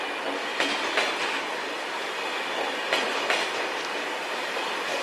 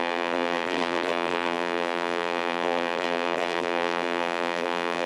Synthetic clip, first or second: second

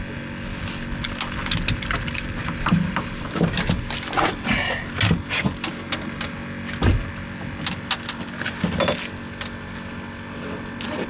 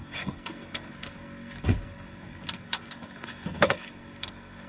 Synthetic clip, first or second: second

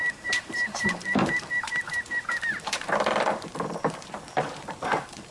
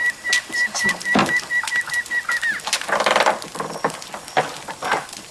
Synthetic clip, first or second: first